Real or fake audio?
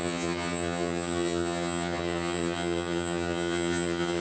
fake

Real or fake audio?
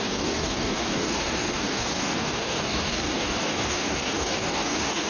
fake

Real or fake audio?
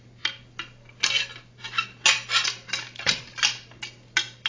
real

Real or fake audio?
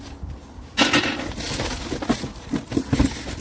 real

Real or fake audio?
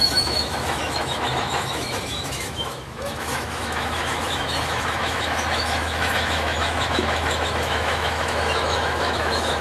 fake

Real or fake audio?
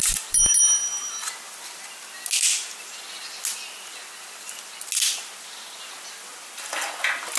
real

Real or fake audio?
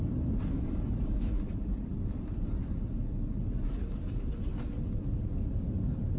fake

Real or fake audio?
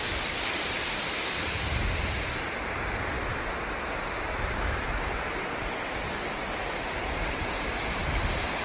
real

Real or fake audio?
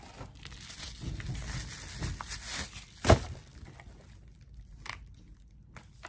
real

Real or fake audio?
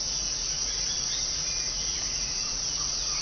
fake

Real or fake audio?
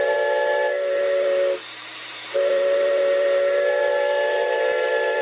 fake